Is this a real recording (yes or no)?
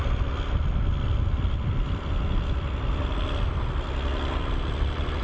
yes